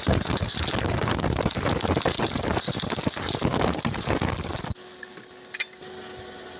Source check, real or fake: real